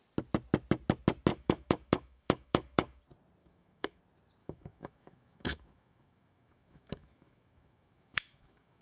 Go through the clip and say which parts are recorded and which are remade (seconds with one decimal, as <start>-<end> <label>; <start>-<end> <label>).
0.0-1.3 recorded; 1.3-3.0 remade; 3.0-3.4 recorded; 3.4-4.0 remade; 4.0-4.4 recorded; 4.4-8.8 remade